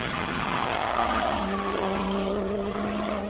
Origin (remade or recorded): remade